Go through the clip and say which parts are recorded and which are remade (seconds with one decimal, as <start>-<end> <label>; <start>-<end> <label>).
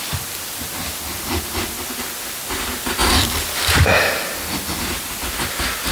0.0-5.9 recorded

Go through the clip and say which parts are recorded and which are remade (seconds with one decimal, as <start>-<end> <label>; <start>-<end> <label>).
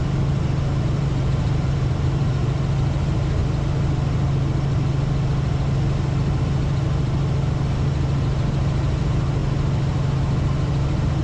0.0-0.7 recorded; 0.7-2.5 remade; 2.5-11.2 recorded